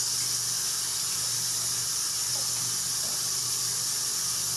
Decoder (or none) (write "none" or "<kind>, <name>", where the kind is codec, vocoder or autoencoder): none